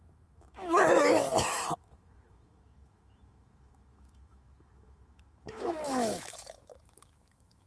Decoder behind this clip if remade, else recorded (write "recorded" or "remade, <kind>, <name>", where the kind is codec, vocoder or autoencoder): remade, autoencoder, DAC-VAE